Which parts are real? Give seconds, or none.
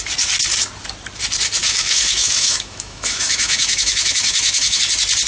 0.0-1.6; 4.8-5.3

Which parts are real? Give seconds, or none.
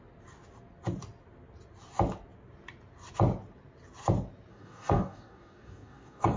0.0-4.5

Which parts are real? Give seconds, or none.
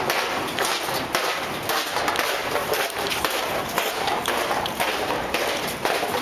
0.0-2.4; 5.6-6.2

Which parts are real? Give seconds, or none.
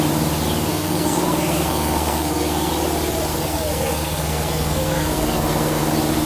0.0-0.7; 2.7-3.3; 5.8-6.3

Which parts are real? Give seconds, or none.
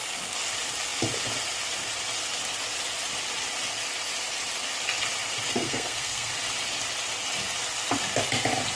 0.0-5.5; 6.3-8.7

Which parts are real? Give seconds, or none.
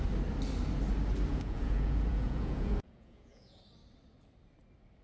0.0-1.3; 3.6-5.0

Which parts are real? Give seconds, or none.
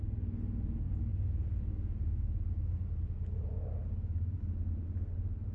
0.0-5.5